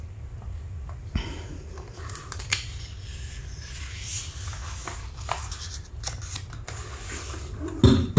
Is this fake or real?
real